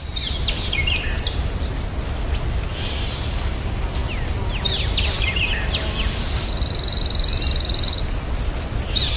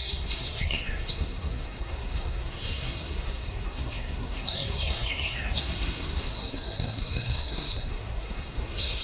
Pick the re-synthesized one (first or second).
second